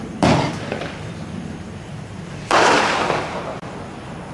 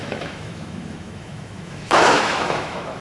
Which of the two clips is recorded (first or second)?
first